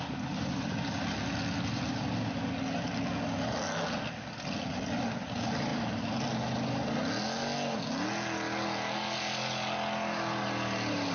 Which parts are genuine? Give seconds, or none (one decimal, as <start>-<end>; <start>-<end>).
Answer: 0.0-11.1